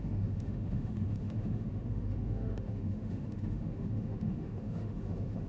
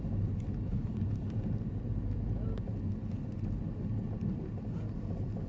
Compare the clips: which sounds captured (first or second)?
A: second